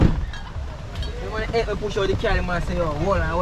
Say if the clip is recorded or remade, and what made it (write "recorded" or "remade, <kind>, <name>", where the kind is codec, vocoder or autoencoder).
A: recorded